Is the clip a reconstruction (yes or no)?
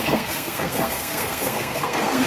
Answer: yes